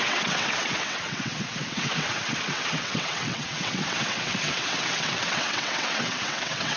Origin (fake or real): fake